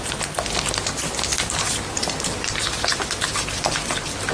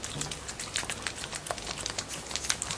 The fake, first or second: first